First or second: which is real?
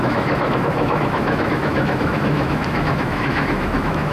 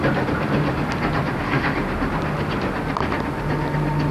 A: second